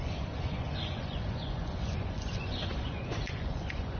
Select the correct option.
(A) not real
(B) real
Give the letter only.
A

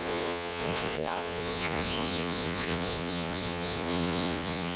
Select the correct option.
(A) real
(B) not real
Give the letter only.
B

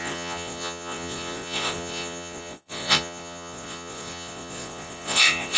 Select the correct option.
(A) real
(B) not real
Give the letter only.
B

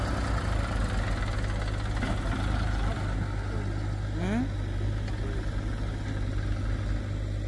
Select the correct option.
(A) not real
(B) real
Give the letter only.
B